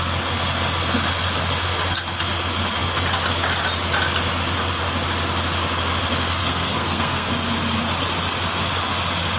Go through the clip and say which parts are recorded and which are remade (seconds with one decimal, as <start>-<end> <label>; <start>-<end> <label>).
0.0-6.4 recorded; 6.4-7.3 remade; 7.3-9.4 recorded